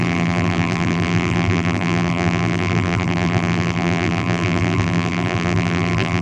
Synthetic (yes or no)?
yes